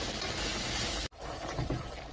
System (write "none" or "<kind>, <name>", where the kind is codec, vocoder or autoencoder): none